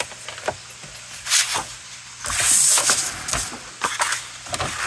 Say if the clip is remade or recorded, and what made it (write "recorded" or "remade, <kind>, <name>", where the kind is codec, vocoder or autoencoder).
recorded